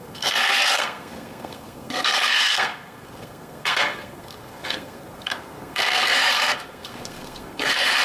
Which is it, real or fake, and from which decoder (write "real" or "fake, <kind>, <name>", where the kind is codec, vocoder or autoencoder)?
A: fake, codec, SNAC